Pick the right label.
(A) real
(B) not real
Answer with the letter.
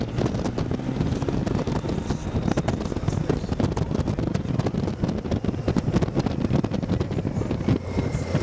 A